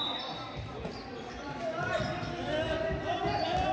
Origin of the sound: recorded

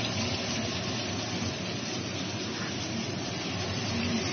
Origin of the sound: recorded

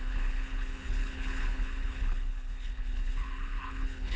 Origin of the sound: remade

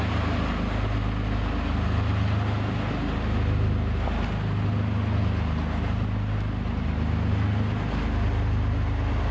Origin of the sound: recorded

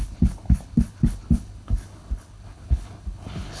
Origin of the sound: remade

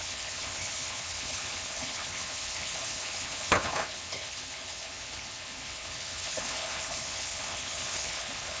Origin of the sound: remade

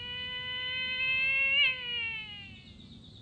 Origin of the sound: recorded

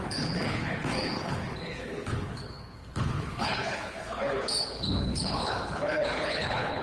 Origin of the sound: remade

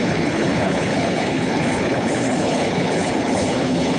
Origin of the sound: remade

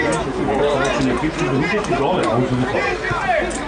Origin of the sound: recorded